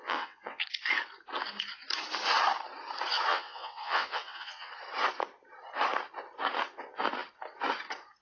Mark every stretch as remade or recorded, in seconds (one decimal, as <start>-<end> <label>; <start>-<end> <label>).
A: 0.0-0.6 remade; 0.6-3.3 recorded; 3.3-4.7 remade; 4.7-8.2 recorded